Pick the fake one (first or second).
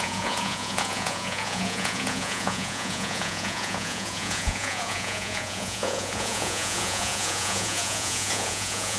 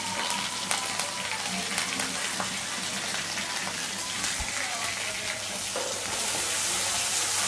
first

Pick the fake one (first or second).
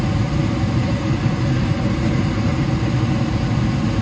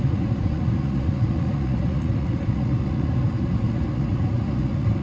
second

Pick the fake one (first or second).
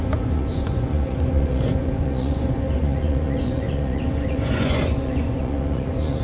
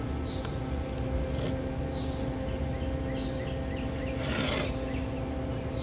first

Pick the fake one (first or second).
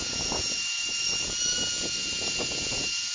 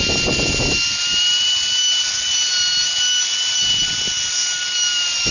first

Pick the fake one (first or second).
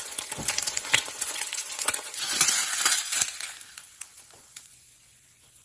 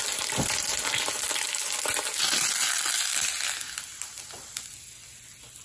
first